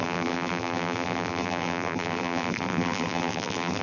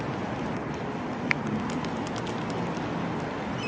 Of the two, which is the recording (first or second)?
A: second